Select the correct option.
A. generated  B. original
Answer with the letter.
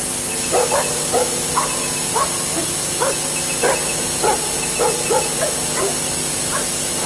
B